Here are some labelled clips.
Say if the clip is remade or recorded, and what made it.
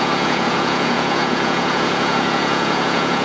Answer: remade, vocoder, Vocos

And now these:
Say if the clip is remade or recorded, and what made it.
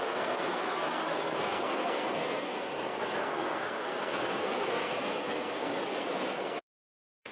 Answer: remade, codec, SNAC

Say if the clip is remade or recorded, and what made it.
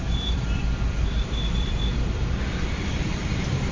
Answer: remade, vocoder, BigVGAN v2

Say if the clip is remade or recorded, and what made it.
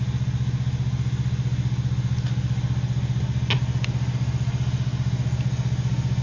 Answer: recorded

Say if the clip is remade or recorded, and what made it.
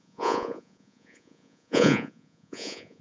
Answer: remade, vocoder, Vocos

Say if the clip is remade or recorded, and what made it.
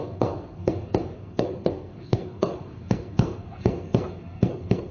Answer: remade, codec, SNAC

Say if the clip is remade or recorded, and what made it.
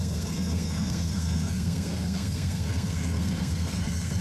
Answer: remade, codec, SNAC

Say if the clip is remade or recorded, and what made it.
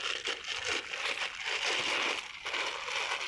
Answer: recorded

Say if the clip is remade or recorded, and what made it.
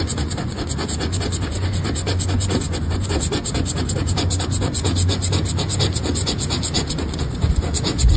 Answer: remade, vocoder, Vocos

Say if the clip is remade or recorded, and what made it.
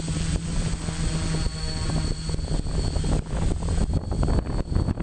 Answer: recorded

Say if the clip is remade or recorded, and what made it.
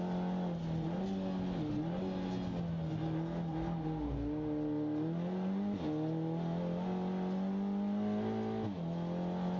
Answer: recorded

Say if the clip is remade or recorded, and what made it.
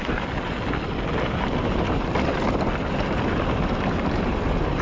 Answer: recorded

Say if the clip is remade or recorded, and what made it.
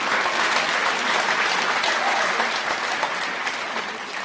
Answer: recorded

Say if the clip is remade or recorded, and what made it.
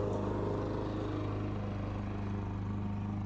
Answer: recorded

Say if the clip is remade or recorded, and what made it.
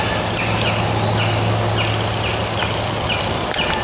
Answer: recorded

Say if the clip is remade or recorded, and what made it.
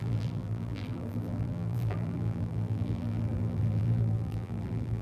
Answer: remade, vocoder, BigVGAN v2